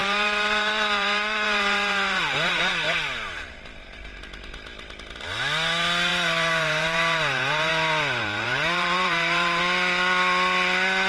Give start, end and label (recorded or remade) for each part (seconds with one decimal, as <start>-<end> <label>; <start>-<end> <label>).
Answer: 0.0-2.6 remade; 2.6-6.1 recorded; 6.1-7.7 remade; 7.7-8.2 recorded; 8.2-9.6 remade; 9.6-11.1 recorded